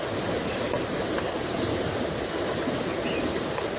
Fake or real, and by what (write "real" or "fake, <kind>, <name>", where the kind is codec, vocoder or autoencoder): real